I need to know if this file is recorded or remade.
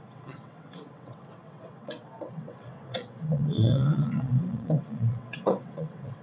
remade